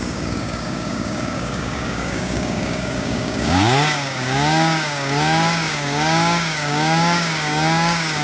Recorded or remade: remade